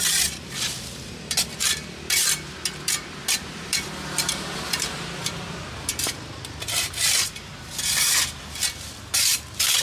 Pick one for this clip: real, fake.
fake